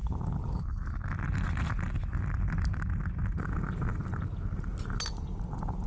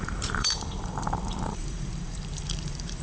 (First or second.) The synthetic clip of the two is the second